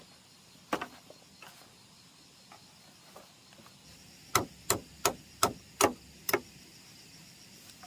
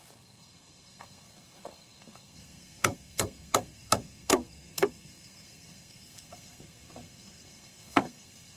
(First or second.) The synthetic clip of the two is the second